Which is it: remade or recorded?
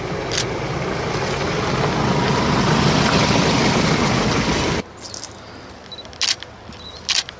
recorded